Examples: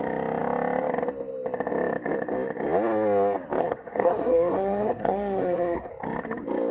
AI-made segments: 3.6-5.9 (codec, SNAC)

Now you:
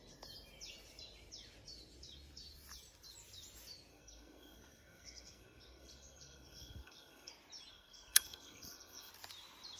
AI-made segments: 3.9-7.3 (codec, SNAC); 7.7-9.1